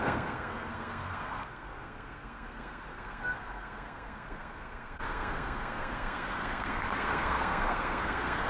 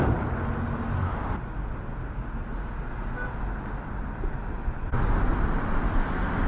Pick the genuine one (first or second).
second